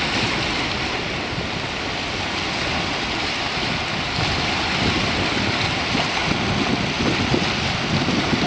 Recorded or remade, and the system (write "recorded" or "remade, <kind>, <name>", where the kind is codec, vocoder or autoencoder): recorded